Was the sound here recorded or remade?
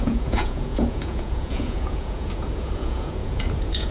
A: remade